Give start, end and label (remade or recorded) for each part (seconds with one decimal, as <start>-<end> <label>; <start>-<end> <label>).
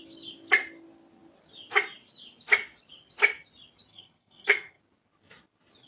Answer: 0.0-3.9 recorded; 3.9-4.8 remade; 4.8-5.9 recorded